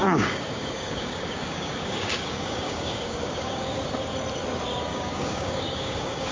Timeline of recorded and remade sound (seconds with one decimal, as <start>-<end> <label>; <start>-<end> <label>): 0.0-3.8 remade; 3.8-4.9 recorded; 4.9-6.3 remade